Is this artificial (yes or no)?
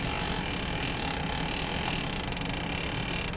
no